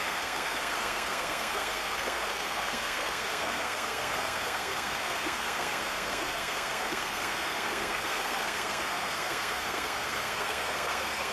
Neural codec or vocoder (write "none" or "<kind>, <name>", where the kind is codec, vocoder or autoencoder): codec, SNAC